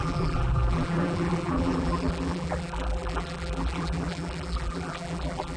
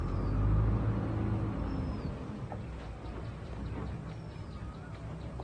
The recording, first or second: second